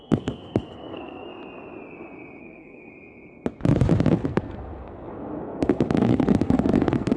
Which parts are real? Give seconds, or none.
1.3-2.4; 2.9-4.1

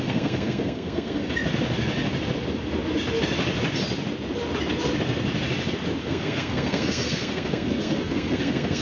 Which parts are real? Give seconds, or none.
1.2-6.0

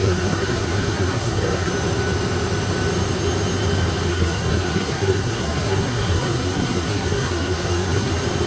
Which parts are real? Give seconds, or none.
1.7-4.1; 8.1-8.5

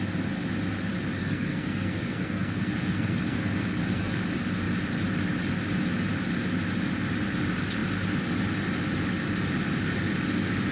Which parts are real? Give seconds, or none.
0.0-1.2; 4.2-10.7

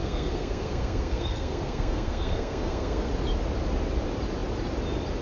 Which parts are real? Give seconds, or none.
3.1-5.2